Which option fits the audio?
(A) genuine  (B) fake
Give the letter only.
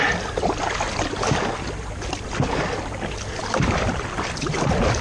A